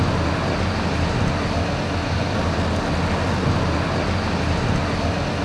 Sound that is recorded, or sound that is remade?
recorded